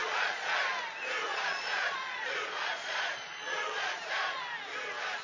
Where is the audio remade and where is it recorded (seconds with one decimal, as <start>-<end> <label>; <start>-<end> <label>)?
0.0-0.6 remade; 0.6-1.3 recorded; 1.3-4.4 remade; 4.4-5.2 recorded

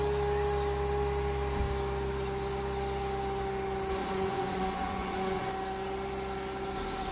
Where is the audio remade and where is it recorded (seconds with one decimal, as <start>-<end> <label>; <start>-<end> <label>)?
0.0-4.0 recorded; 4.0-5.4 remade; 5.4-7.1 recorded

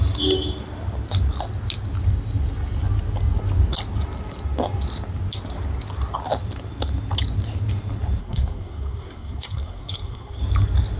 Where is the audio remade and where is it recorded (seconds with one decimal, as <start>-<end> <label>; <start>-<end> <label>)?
0.0-8.2 recorded; 8.2-10.4 remade; 10.4-11.0 recorded

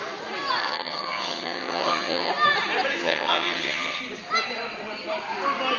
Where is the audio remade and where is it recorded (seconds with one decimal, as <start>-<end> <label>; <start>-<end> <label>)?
0.0-0.6 recorded; 0.6-2.3 remade; 2.3-3.0 recorded; 3.0-4.0 remade; 4.0-5.8 recorded

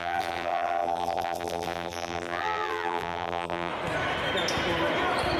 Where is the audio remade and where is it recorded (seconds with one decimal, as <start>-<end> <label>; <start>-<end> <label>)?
0.0-3.7 remade; 3.7-5.4 recorded